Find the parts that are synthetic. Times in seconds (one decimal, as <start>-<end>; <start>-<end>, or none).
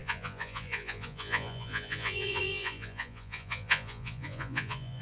0.0-5.0